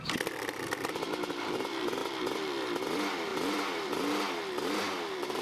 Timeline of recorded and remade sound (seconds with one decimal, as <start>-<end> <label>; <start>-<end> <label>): 0.0-5.4 remade